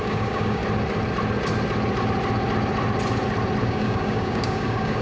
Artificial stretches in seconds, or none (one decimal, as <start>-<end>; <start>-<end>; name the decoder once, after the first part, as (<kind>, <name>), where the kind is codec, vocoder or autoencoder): 0.0-0.6 (codec, DAC); 3.6-5.0